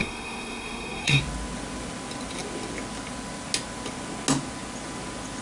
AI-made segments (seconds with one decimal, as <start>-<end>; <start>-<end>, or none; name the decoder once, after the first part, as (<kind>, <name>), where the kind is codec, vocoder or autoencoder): 0.0-1.2 (codec, SNAC)